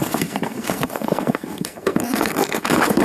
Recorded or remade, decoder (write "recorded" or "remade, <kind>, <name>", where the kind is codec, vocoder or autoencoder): remade, codec, SNAC